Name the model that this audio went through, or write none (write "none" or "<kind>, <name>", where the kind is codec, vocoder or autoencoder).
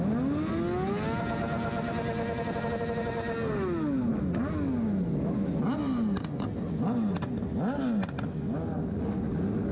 none